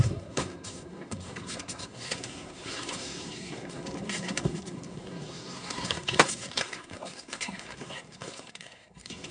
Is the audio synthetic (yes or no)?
yes